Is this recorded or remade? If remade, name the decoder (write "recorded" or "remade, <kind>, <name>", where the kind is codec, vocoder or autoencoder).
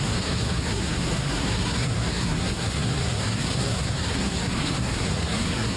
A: remade, codec, SNAC